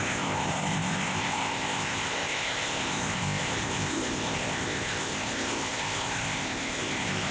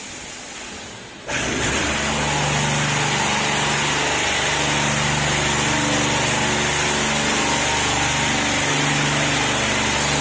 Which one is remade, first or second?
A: first